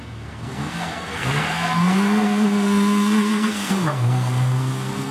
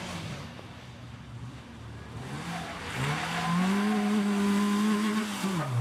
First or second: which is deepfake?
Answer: first